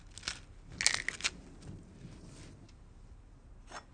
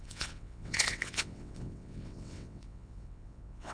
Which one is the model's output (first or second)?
second